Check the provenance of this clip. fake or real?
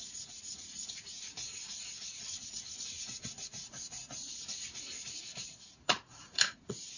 fake